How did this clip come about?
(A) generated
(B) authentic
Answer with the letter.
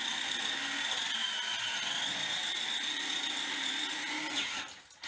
B